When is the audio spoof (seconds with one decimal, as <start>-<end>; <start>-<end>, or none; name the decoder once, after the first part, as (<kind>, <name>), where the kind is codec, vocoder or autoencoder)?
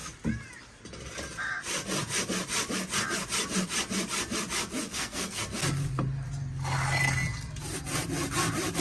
4.9-5.4 (codec, SNAC)